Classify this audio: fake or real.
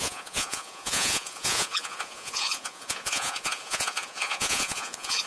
fake